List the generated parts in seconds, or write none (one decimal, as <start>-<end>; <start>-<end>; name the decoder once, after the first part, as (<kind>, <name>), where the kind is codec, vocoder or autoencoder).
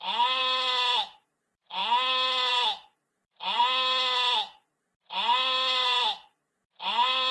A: 0.0-0.4 (vocoder, BigVGAN v2); 1.0-1.8; 2.5-3.6; 4.7-7.3